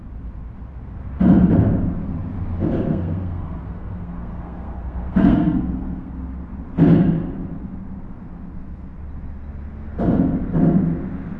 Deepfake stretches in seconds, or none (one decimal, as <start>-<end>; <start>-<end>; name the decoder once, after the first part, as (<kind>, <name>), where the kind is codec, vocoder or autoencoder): 2.9-6.1 (codec, SNAC)